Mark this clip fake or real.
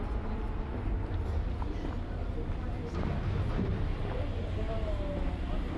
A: real